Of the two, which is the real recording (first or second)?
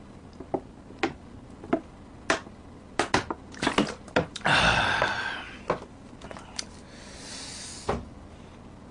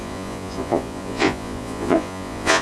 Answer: first